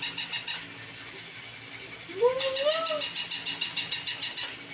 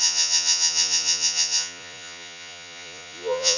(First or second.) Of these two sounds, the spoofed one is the second